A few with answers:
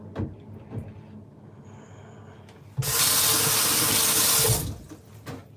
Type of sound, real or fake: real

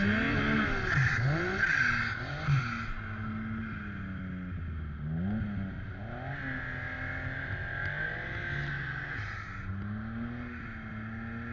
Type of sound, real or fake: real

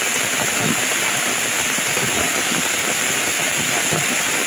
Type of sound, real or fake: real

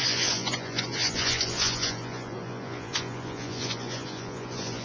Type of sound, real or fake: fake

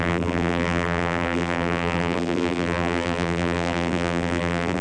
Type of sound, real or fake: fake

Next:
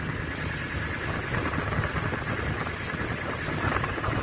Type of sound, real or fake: real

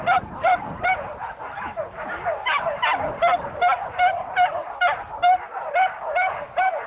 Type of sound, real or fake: real